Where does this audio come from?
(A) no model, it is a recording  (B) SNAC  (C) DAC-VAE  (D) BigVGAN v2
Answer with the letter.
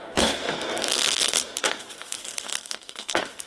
B